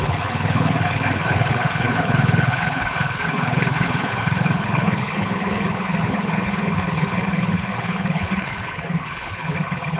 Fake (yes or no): yes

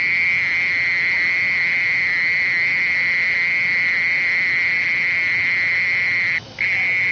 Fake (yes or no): no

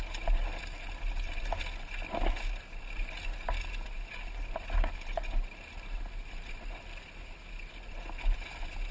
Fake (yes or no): no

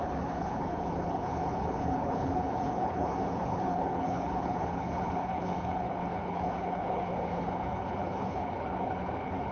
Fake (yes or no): yes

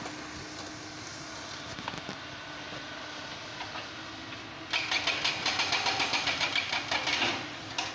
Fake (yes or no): no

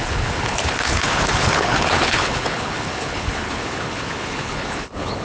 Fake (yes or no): yes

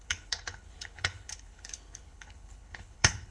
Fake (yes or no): yes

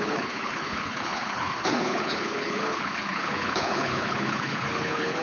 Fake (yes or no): yes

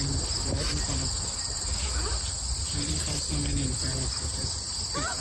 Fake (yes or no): no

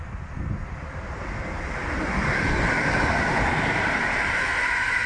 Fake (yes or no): no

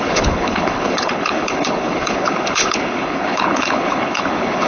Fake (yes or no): yes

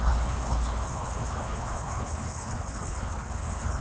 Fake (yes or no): yes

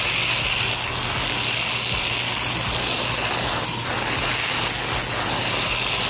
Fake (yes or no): no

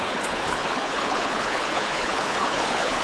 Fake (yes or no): yes